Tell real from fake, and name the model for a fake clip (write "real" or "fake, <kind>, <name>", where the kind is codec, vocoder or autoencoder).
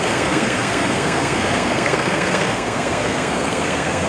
fake, codec, SNAC